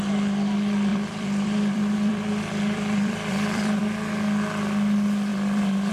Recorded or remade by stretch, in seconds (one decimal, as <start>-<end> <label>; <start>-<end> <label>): 0.0-0.9 recorded; 0.9-3.8 remade; 3.8-5.3 recorded; 5.3-5.9 remade